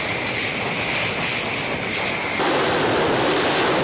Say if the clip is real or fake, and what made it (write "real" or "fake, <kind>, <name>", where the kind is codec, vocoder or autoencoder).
real